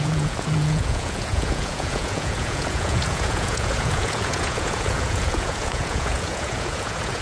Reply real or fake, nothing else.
fake